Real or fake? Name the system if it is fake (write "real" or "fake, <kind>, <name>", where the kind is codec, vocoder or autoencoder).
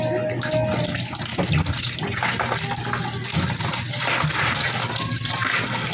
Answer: real